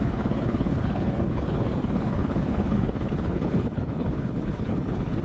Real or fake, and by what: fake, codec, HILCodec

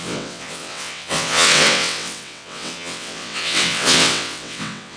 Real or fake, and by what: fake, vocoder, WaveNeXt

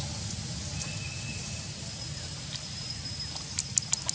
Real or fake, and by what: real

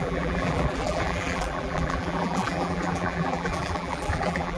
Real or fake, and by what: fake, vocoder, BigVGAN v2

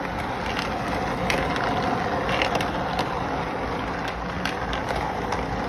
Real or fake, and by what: real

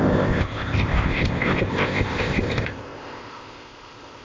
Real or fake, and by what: fake, codec, ZipCodec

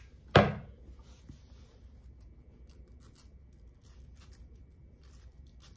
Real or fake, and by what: real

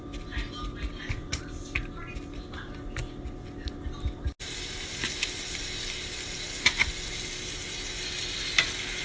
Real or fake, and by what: real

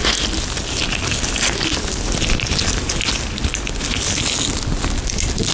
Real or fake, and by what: real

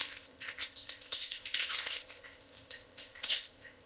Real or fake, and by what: fake, codec, ZipCodec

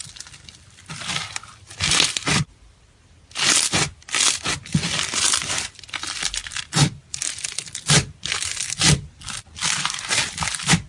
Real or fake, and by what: real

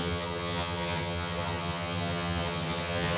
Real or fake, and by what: fake, vocoder, HiFi-GAN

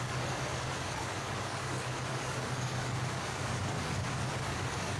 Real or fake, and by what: fake, codec, DAC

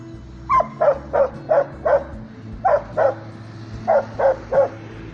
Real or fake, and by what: real